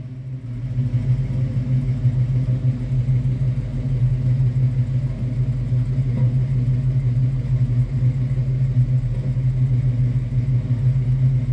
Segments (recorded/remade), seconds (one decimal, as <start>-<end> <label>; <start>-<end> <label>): 0.0-11.5 recorded